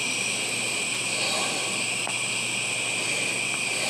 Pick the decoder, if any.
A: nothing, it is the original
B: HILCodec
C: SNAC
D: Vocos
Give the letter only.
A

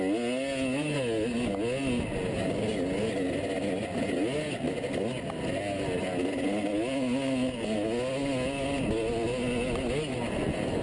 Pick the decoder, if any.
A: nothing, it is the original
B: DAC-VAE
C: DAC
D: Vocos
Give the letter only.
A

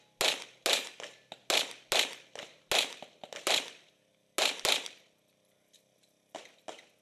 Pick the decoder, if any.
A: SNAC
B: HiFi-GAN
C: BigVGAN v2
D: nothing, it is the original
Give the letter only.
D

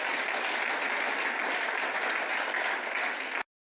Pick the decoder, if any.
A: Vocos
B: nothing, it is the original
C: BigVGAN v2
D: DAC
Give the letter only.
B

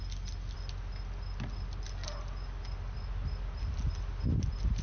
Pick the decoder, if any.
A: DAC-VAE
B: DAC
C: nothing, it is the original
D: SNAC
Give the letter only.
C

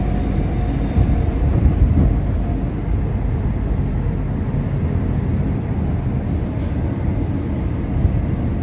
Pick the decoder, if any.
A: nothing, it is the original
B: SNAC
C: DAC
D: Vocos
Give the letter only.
A